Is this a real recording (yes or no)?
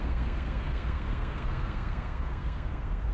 no